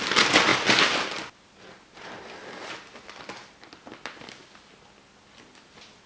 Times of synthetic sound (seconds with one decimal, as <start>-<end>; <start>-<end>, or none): none